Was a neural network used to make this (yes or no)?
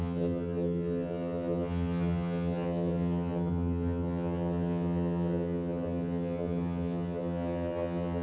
yes